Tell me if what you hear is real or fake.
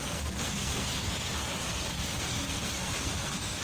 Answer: fake